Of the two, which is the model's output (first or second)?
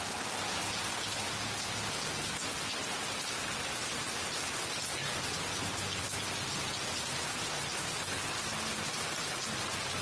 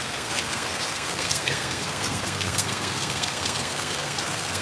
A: second